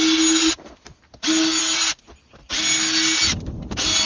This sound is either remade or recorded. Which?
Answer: recorded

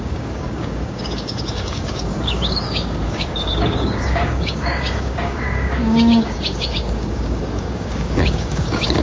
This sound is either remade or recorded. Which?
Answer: remade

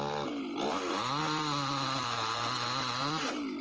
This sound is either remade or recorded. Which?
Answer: recorded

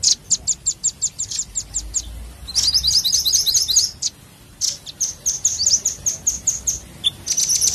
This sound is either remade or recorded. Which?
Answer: recorded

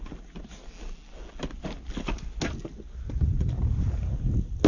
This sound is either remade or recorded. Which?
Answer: recorded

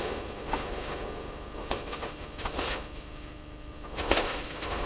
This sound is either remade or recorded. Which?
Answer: remade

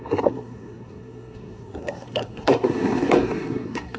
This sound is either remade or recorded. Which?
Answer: remade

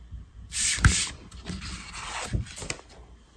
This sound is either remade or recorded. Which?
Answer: remade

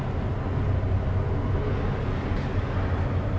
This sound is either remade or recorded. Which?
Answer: recorded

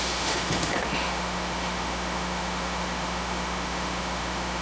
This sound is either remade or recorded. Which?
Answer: remade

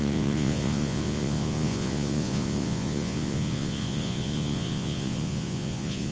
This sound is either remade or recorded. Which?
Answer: remade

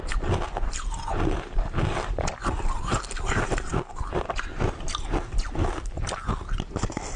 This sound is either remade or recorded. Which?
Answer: recorded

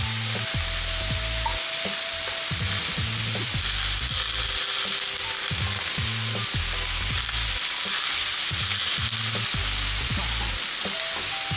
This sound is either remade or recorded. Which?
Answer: recorded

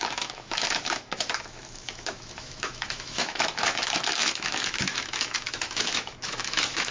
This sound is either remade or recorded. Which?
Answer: remade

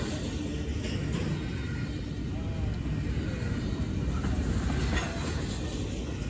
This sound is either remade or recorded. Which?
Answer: recorded